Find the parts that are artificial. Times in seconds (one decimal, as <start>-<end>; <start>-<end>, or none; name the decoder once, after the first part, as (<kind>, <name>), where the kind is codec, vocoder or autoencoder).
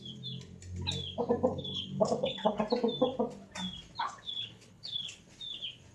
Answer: 1.5-2.6 (codec, HILCodec); 4.0-5.2